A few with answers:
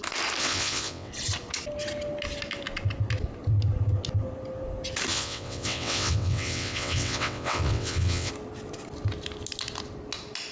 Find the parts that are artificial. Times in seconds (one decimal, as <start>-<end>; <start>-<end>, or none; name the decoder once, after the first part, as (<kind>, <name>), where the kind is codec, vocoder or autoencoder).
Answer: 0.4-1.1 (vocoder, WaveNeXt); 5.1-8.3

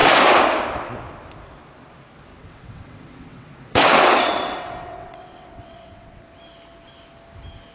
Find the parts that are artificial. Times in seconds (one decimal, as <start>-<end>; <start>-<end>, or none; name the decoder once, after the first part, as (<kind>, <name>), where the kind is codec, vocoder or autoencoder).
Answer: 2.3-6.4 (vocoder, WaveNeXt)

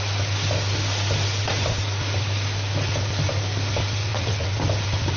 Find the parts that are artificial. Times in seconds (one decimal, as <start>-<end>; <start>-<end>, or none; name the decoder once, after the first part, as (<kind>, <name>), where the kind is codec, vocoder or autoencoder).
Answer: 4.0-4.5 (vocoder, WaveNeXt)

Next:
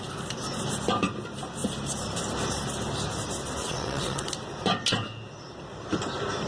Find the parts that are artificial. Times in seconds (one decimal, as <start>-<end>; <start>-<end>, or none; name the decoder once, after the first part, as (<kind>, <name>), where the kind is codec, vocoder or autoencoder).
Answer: 3.6-4.3 (vocoder, WaveNeXt)

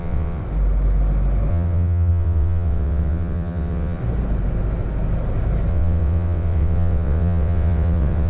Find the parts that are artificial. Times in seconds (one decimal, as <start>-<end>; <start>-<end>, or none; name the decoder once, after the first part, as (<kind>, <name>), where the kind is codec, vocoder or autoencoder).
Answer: 0.0-0.4 (vocoder, WaveNeXt); 1.5-4.0; 5.7-8.3

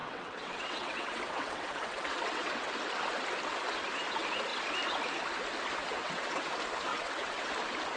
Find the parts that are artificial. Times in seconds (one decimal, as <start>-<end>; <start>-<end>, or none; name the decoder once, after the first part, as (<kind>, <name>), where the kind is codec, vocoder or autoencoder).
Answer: 0.0-2.7 (vocoder, WaveNeXt); 5.8-6.5; 6.9-7.5

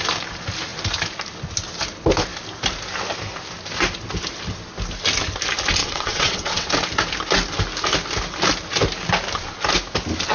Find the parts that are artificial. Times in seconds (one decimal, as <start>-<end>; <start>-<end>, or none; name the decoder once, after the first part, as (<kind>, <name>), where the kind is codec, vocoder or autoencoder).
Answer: 5.8-6.7 (vocoder, WaveNeXt)